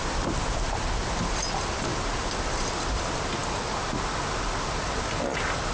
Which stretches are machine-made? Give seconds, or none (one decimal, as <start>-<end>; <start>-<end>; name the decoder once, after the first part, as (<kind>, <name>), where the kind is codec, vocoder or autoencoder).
none